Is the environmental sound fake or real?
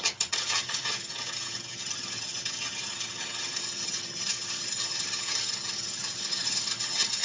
fake